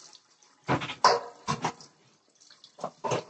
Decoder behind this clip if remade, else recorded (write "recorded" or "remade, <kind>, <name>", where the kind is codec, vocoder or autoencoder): recorded